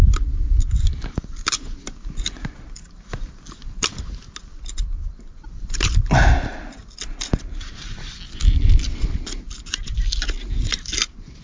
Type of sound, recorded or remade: recorded